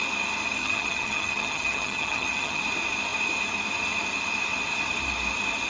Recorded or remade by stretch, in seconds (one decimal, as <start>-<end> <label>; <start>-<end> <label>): 0.0-0.6 recorded; 0.6-2.6 remade; 2.6-5.7 recorded